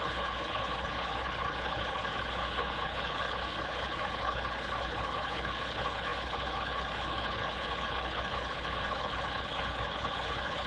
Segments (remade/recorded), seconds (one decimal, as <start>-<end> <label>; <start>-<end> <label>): 0.0-10.7 remade